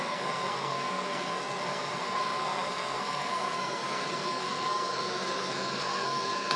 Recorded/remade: remade